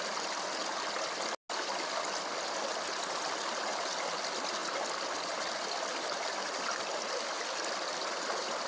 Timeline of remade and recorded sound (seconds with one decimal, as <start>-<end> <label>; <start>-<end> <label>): 0.0-8.7 recorded